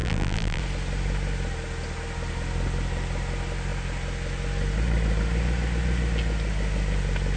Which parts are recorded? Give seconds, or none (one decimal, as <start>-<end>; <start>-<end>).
0.6-7.4